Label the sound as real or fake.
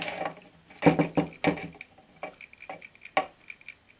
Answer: real